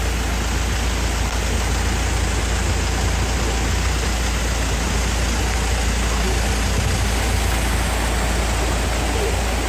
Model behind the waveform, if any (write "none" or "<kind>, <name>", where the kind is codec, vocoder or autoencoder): none